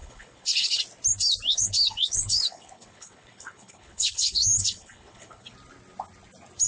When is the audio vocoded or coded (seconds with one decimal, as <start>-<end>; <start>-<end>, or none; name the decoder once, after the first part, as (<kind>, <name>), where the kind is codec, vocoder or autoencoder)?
0.0-0.8 (codec, HILCodec); 1.5-5.5